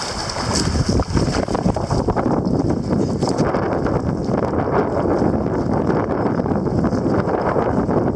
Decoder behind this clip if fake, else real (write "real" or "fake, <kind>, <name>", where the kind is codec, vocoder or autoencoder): real